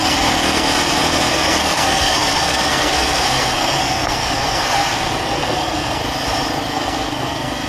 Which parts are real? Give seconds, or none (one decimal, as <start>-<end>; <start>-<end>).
6.0-6.7